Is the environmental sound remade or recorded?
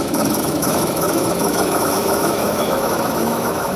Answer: remade